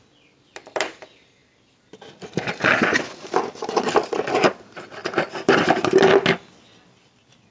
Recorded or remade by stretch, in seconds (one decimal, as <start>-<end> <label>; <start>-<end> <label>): 0.0-7.5 recorded